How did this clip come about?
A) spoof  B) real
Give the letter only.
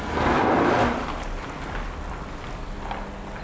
B